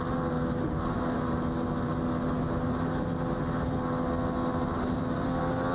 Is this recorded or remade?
recorded